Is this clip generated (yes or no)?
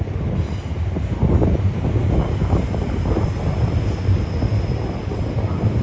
no